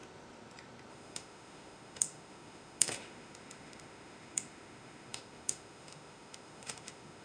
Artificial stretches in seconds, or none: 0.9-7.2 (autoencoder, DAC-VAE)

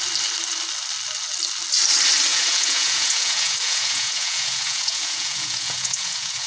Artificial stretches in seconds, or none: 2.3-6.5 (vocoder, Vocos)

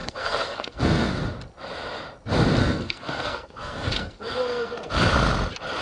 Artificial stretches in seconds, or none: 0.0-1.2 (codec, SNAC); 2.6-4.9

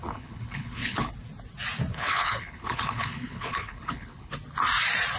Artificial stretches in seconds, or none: 0.0-1.1 (codec, HILCodec); 1.9-4.3

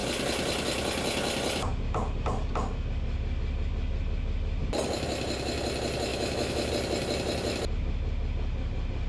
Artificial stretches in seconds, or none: 6.1-6.7 (autoencoder, DAC-VAE)

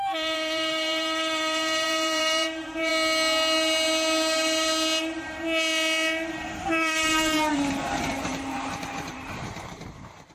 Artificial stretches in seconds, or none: 0.0-2.9 (vocoder, BigVGAN v2); 6.3-10.3

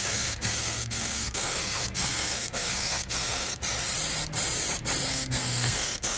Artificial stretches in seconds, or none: 0.0-3.6 (codec, SNAC); 5.1-6.2

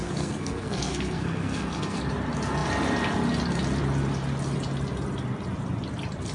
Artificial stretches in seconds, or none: 0.0-2.0 (codec, SNAC)